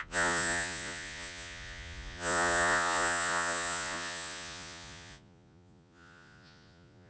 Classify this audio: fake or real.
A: fake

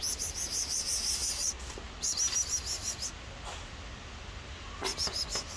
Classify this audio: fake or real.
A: real